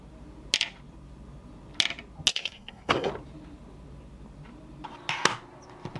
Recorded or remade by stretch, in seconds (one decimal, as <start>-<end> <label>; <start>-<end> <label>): 0.0-2.3 recorded; 2.3-3.1 remade; 3.1-6.0 recorded